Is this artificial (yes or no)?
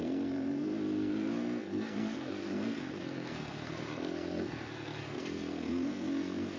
yes